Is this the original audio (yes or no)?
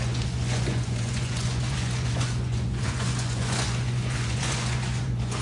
no